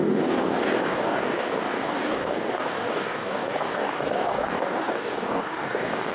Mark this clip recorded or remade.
remade